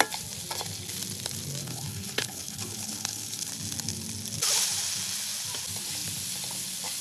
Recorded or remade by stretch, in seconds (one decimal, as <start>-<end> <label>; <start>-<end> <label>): 0.0-1.6 recorded; 1.6-3.5 remade; 3.5-7.0 recorded

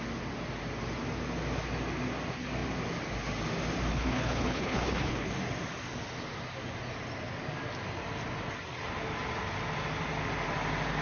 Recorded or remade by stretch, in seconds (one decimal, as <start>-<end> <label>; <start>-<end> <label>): 0.0-3.9 recorded; 3.9-5.3 remade; 5.3-11.0 recorded